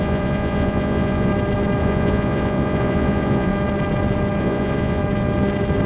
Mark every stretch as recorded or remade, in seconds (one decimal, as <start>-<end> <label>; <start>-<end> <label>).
0.0-1.3 remade; 1.3-1.8 recorded; 1.8-3.5 remade; 3.5-4.4 recorded; 4.4-5.0 remade; 5.0-5.9 recorded